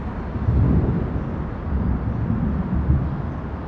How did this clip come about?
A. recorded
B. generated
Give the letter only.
A